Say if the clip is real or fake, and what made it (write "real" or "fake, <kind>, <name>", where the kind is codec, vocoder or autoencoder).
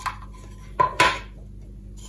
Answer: real